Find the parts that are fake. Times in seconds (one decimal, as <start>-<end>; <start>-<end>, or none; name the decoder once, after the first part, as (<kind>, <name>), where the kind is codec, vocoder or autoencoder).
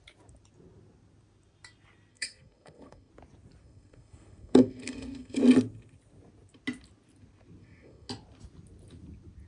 2.1-3.1 (codec, SNAC); 3.6-5.4; 7.6-8.1